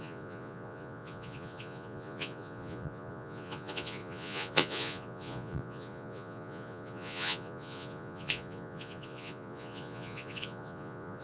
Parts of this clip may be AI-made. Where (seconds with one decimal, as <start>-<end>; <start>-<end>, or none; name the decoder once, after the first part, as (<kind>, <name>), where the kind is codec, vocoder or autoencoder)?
0.0-11.2 (vocoder, Vocos)